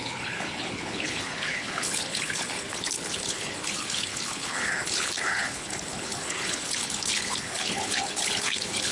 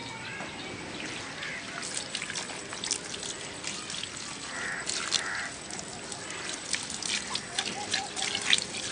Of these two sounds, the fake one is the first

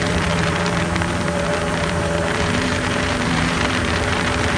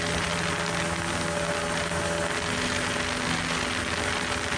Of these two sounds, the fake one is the first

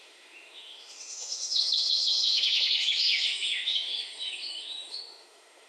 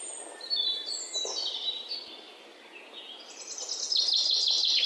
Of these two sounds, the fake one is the first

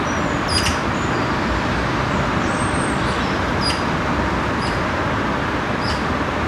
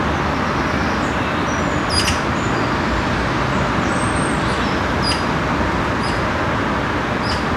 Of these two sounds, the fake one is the first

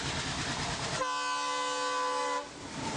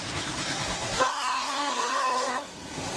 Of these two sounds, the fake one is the second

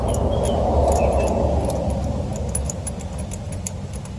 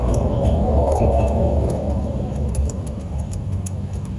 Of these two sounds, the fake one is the second